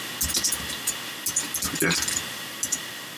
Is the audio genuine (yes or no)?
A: yes